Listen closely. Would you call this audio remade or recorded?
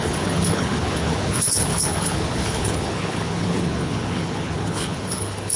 remade